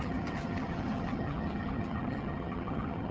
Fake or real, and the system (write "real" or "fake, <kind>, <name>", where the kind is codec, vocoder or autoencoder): fake, vocoder, HiFi-GAN